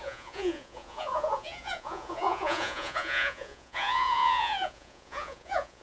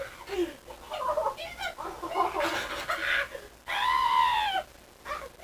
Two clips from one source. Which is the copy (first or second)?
first